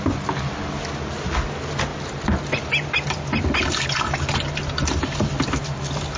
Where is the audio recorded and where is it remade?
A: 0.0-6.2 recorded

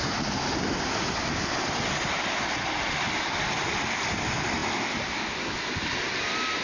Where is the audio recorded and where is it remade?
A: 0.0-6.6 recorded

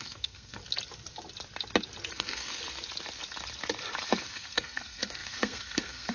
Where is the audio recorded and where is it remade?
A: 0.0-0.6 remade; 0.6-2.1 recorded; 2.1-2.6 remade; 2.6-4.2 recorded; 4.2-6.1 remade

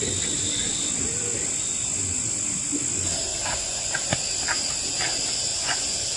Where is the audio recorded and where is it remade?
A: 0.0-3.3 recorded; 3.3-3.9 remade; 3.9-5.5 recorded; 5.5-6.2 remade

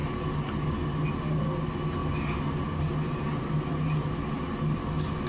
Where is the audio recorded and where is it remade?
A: 0.0-5.3 recorded

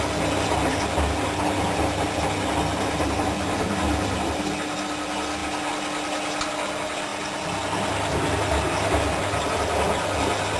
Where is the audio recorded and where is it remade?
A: 0.0-10.6 recorded

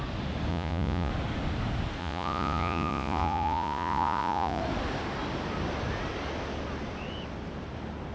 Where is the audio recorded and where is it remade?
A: 0.0-0.5 recorded; 0.5-1.1 remade; 1.1-2.0 recorded; 2.0-4.6 remade; 4.6-8.1 recorded